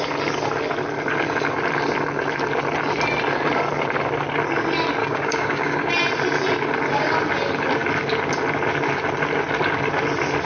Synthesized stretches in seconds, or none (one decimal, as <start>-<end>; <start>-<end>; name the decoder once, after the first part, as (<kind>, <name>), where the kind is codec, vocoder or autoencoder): 5.0-5.9 (codec, DAC)